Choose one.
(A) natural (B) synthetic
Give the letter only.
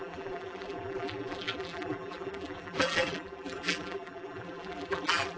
B